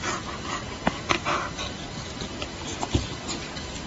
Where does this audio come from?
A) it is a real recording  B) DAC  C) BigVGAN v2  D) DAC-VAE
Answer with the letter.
A